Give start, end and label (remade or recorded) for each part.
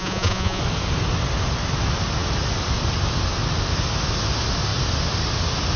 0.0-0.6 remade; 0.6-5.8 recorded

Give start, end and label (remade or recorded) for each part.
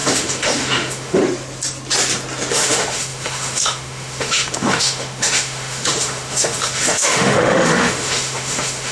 0.0-1.2 remade; 1.2-2.5 recorded; 2.5-8.9 remade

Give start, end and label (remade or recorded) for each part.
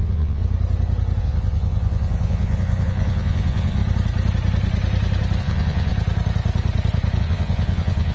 0.0-0.4 remade; 0.4-1.2 recorded; 1.2-3.8 remade; 3.8-5.4 recorded; 5.4-5.9 remade; 5.9-7.2 recorded; 7.2-8.1 remade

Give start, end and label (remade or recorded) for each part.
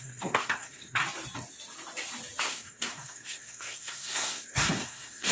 0.0-1.0 remade; 1.0-2.4 recorded; 2.4-5.3 remade